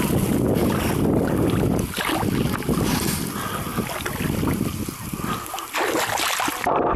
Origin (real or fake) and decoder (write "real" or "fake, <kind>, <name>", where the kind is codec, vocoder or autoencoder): real